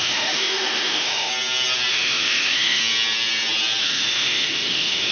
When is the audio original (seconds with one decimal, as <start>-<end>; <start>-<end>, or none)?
1.3-1.9; 2.8-3.8